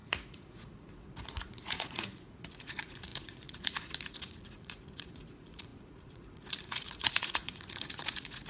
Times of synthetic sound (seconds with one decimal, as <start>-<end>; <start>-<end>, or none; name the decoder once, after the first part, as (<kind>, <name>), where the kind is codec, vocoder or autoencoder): 0.0-8.5 (vocoder, Vocos)